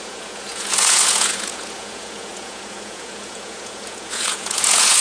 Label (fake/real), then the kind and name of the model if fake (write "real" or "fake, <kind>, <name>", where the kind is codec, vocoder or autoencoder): fake, vocoder, Vocos